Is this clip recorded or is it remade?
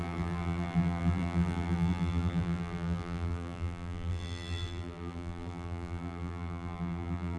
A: remade